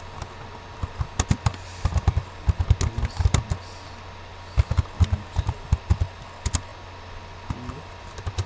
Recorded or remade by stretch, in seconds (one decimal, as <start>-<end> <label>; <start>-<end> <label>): 0.0-8.5 recorded

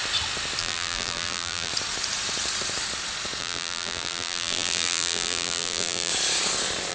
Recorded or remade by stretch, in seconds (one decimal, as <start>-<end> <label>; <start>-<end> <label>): 0.0-0.6 recorded; 0.6-1.7 remade; 1.7-3.4 recorded; 3.4-6.1 remade; 6.1-6.9 recorded

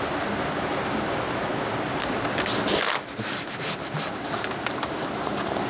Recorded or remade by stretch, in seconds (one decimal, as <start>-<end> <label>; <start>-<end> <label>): 0.0-1.5 remade; 1.5-4.9 recorded; 4.9-5.7 remade

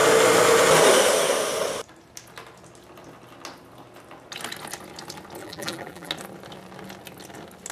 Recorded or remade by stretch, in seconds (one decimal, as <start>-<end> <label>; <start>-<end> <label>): 0.0-5.4 recorded; 5.4-6.1 remade; 6.1-7.7 recorded

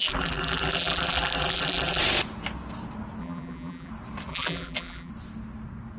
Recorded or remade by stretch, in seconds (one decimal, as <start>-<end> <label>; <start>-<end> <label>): 0.0-2.0 remade; 2.0-3.2 recorded; 3.2-3.9 remade; 3.9-4.3 recorded; 4.3-5.1 remade; 5.1-6.0 recorded

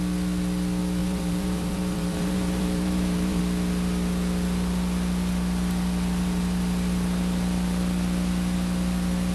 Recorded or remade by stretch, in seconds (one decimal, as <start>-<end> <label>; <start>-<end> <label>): 0.0-1.0 recorded; 1.0-3.4 remade; 3.4-9.3 recorded

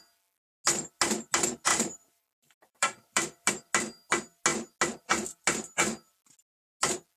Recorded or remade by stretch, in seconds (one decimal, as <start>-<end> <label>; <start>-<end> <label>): 0.0-1.7 recorded; 1.7-3.5 remade; 3.5-7.2 recorded